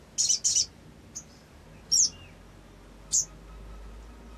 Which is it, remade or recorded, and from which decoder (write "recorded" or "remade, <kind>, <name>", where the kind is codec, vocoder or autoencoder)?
recorded